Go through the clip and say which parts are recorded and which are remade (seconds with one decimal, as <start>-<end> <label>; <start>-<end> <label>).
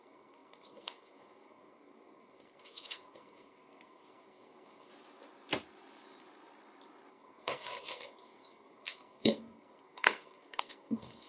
0.0-4.9 remade; 4.9-7.1 recorded; 7.1-11.3 remade